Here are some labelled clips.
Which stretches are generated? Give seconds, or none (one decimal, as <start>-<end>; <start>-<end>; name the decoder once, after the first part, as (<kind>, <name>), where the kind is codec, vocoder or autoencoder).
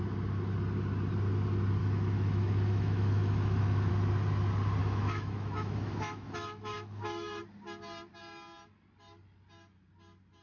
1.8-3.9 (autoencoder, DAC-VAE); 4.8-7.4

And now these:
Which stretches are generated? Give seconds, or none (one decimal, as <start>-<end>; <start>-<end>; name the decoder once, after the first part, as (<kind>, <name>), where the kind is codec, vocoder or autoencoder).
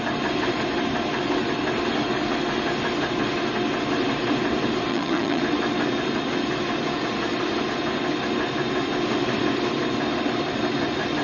4.9-5.4 (vocoder, HiFi-GAN)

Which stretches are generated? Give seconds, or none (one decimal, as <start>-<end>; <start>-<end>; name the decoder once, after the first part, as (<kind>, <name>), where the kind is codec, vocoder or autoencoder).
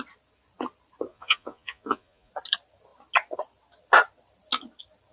1.1-2.3 (vocoder, Vocos)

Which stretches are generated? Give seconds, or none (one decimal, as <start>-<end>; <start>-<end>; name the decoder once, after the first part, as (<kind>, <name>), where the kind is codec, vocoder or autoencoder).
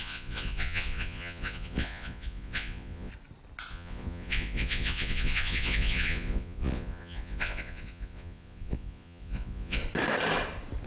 0.0-3.1 (vocoder, Vocos); 3.7-9.8